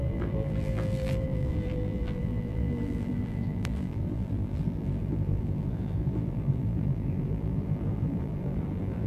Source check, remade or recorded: remade